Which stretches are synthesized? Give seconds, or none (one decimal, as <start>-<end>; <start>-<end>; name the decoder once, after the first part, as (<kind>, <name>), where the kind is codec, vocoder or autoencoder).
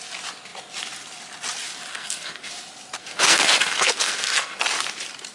1.9-2.5 (codec, SNAC); 3.0-4.6